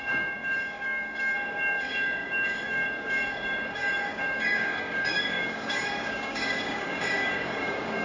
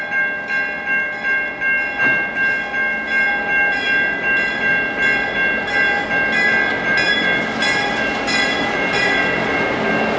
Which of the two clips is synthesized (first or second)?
first